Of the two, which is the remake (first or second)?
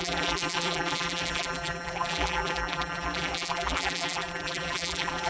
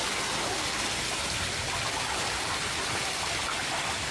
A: first